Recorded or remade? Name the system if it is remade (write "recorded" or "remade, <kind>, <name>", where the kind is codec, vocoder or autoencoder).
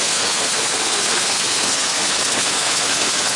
remade, codec, SNAC